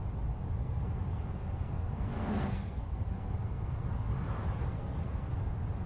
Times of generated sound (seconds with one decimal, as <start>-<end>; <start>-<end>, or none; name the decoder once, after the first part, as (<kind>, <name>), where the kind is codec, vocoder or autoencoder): 0.6-4.1 (codec, SNAC); 4.6-5.4